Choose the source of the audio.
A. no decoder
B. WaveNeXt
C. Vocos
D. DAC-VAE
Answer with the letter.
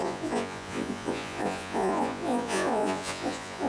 C